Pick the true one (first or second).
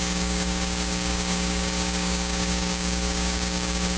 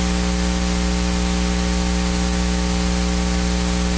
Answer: second